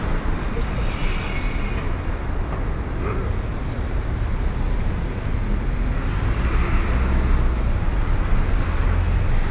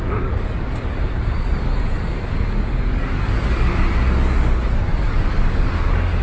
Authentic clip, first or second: first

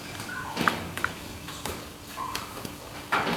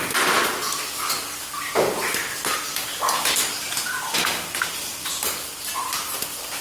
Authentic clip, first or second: second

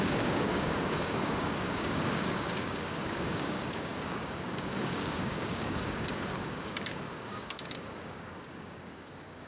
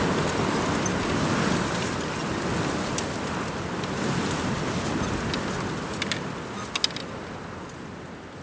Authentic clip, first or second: second